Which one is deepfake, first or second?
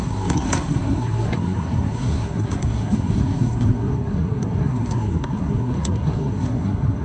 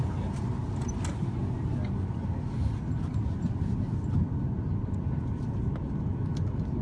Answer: first